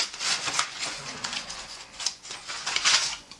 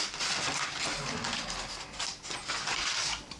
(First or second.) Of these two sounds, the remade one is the first